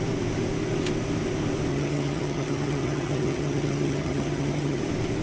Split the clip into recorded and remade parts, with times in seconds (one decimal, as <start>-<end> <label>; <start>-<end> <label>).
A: 0.0-1.7 recorded; 1.7-4.8 remade; 4.8-5.2 recorded